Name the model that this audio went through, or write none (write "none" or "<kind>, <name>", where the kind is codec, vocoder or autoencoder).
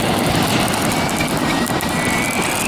none